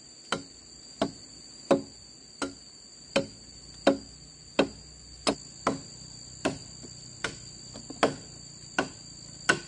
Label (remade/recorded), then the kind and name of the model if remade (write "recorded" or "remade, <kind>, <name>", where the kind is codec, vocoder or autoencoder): recorded